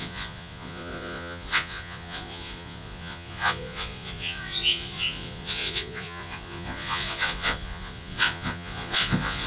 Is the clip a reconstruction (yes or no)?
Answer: yes